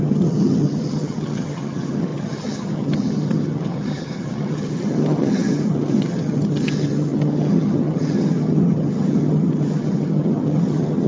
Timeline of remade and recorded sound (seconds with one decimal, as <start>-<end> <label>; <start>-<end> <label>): 0.0-11.1 remade